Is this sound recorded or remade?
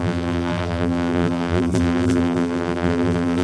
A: remade